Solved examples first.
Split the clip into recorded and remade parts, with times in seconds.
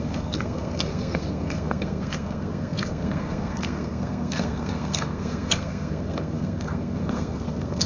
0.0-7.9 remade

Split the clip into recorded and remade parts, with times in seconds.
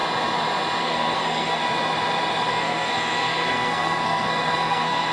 0.0-0.8 recorded; 0.8-1.6 remade; 1.6-2.5 recorded; 2.5-5.1 remade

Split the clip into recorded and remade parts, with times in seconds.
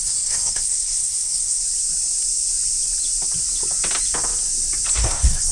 0.0-1.6 remade; 1.6-4.9 recorded; 4.9-5.5 remade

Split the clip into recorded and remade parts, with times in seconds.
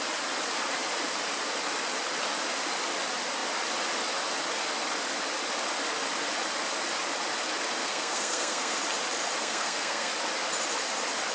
0.0-7.8 recorded; 7.8-8.8 remade; 8.8-9.4 recorded; 9.4-10.1 remade; 10.1-11.3 recorded